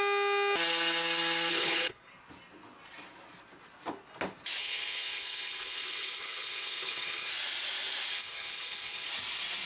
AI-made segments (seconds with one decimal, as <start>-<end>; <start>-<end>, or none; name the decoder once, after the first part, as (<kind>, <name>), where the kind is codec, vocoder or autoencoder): 1.5-2.1 (codec, HILCodec); 4.6-7.3; 8.1-9.1